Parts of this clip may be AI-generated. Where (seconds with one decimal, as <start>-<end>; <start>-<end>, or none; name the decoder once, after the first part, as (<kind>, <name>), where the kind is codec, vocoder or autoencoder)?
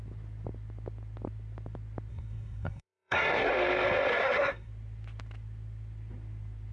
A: 2.1-3.5 (codec, SNAC); 4.1-4.7